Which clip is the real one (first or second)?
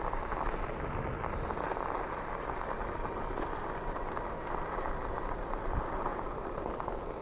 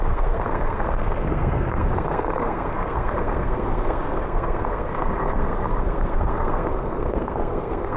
first